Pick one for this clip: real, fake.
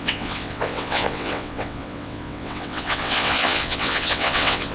fake